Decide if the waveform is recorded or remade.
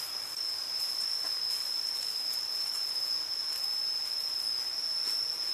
recorded